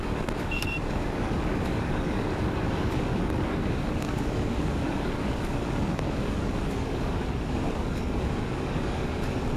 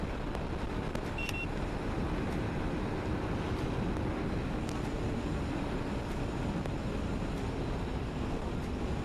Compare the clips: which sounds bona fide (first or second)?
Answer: second